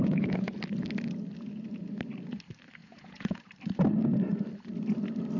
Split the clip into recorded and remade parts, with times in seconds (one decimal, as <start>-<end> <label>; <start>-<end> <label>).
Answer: 0.0-0.6 remade; 0.6-2.8 recorded; 2.8-3.4 remade; 3.4-5.4 recorded